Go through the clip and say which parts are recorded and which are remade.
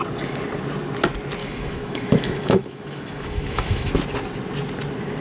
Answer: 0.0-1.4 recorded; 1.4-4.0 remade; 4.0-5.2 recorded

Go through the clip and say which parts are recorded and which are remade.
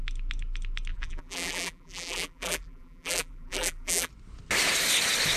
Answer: 0.0-0.9 recorded; 0.9-4.1 remade; 4.1-5.4 recorded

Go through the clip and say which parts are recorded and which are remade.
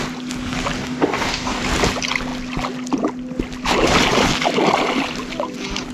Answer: 0.0-0.8 recorded; 0.8-1.6 remade; 1.6-5.9 recorded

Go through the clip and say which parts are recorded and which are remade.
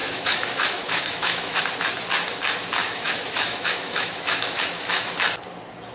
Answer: 0.0-1.6 remade; 1.6-2.8 recorded; 2.8-5.0 remade; 5.0-5.9 recorded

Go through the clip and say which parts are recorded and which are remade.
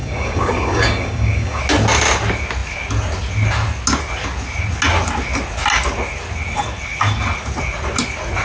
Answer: 0.0-1.6 remade; 1.6-8.4 recorded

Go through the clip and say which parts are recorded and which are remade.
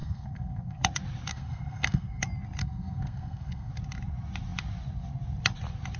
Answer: 0.0-0.8 remade; 0.8-1.3 recorded; 1.3-2.2 remade; 2.2-2.6 recorded; 2.6-3.7 remade; 3.7-6.0 recorded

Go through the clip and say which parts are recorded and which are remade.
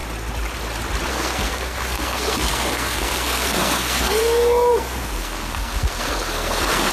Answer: 0.0-1.1 recorded; 1.1-6.9 remade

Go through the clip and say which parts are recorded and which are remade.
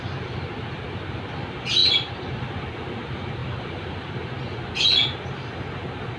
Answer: 0.0-1.8 recorded; 1.8-2.4 remade; 2.4-3.4 recorded; 3.4-4.1 remade; 4.1-6.2 recorded